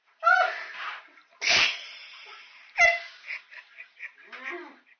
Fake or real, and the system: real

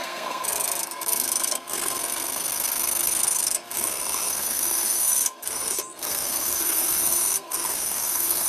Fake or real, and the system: fake, codec, SNAC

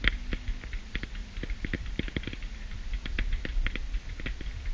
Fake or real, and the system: real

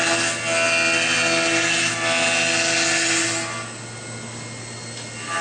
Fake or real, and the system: real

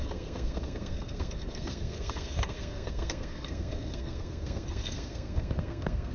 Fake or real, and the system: fake, codec, SNAC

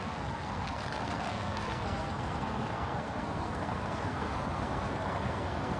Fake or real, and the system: fake, codec, SNAC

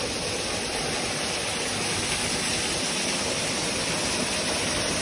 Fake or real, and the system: real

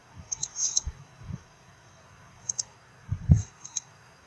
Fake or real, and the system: fake, codec, SNAC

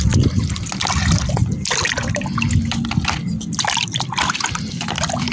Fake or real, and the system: real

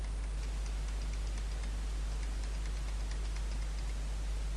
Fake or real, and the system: real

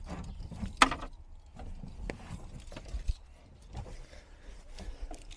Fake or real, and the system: real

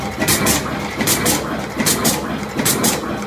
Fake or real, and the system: real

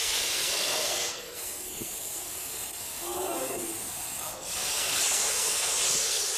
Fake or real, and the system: fake, codec, SNAC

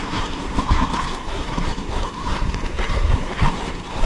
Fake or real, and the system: fake, codec, SNAC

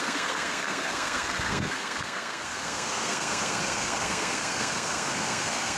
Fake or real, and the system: fake, codec, SNAC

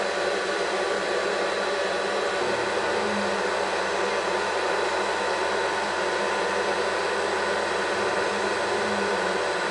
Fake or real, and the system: real